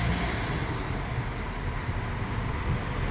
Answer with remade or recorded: recorded